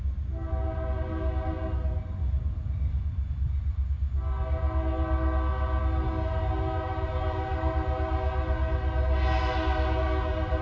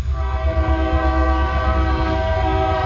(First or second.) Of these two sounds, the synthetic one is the second